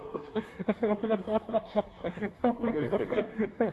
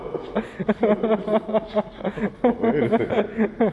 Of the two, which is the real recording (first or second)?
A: second